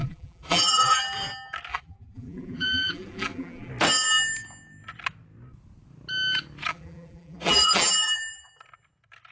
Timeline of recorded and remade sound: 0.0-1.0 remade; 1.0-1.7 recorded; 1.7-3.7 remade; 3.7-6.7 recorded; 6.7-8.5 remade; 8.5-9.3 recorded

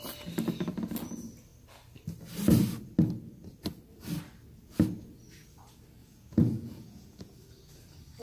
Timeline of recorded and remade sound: 0.0-6.0 recorded; 6.0-7.3 remade; 7.3-8.2 recorded

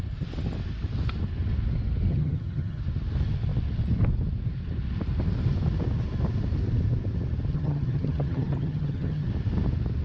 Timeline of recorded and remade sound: 0.0-2.1 recorded; 2.1-2.8 remade; 2.8-7.5 recorded; 7.5-9.3 remade; 9.3-10.0 recorded

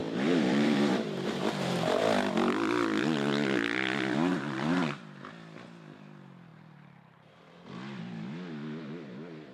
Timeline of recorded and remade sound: 0.0-2.0 remade; 2.0-4.3 recorded; 4.3-5.2 remade; 5.2-6.5 recorded; 6.5-8.0 remade; 8.0-9.5 recorded

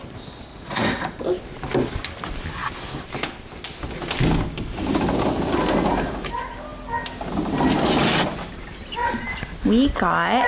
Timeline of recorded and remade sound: 0.0-0.5 recorded; 0.5-1.2 remade; 1.2-10.5 recorded

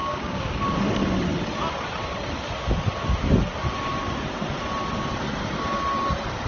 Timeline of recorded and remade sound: 0.0-0.6 remade; 0.6-6.5 recorded

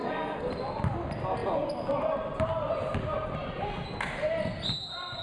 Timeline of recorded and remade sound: 0.0-0.5 remade; 0.5-5.2 recorded